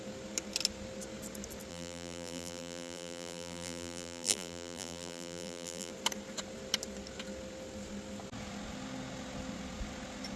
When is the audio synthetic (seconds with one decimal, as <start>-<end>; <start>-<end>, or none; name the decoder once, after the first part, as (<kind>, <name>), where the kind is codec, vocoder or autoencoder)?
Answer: 1.7-5.9 (vocoder, BigVGAN v2)